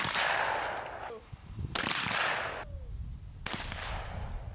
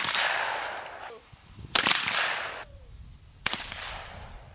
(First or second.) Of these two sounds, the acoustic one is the first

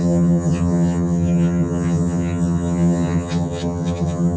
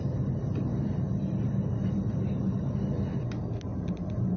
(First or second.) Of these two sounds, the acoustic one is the second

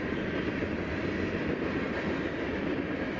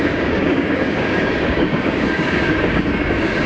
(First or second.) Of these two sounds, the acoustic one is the first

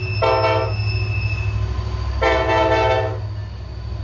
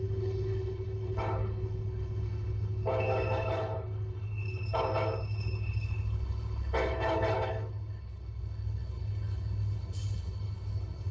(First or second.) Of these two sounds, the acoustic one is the first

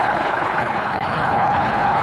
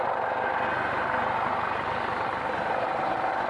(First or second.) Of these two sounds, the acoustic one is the second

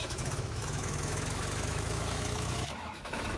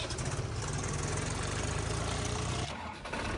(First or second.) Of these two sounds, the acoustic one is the second